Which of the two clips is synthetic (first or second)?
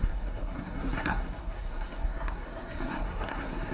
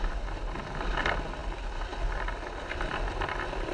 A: first